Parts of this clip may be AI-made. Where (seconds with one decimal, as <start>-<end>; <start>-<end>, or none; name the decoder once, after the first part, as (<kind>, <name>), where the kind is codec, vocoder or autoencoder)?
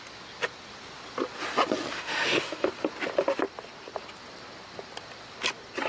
1.9-2.7 (autoencoder, DAC-VAE)